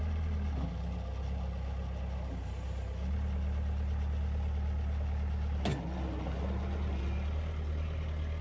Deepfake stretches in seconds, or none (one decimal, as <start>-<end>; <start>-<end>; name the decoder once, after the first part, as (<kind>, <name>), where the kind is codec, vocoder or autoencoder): none